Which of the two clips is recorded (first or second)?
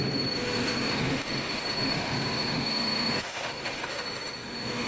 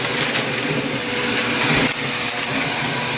second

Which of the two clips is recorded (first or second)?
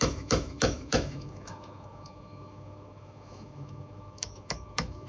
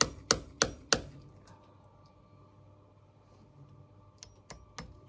second